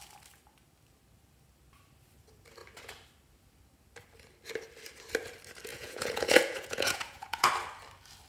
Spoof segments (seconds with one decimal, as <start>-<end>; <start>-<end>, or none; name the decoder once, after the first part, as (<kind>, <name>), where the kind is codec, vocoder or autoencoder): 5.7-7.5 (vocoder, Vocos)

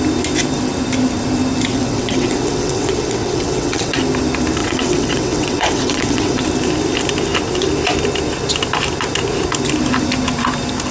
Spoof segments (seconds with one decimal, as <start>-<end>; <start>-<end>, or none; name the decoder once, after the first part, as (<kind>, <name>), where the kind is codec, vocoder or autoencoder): 1.7-4.0 (vocoder, WaveNeXt); 4.6-6.4

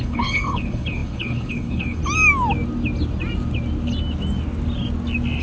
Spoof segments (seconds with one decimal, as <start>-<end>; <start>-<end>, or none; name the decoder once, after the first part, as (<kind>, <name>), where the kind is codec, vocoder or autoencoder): 0.0-2.0 (codec, HILCodec)

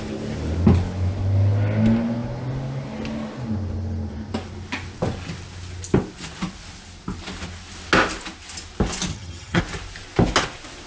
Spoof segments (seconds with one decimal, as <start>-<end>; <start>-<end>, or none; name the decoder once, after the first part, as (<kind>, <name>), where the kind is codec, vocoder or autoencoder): 9.1-9.6 (vocoder, HiFi-GAN)